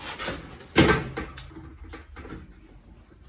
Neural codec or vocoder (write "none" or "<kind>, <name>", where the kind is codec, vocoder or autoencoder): none